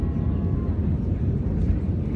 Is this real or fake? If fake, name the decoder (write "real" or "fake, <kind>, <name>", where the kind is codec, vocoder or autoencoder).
real